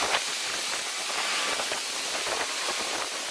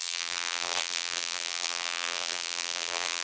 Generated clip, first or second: second